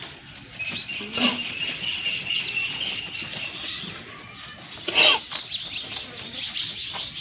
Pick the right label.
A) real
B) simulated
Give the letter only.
A